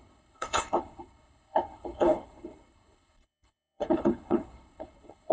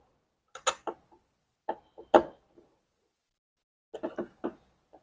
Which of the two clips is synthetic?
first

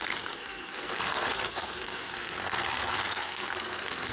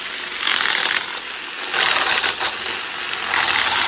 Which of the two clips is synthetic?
first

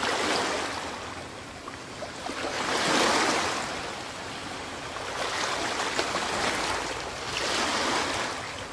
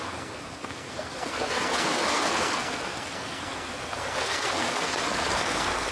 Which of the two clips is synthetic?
second